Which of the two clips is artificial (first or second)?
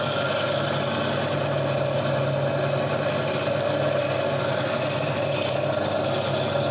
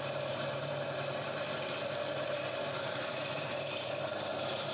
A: second